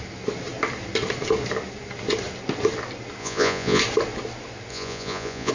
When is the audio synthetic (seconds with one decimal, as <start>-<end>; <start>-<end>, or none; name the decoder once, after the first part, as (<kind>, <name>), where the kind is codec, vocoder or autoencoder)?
3.2-3.8 (vocoder, Vocos); 4.7-5.5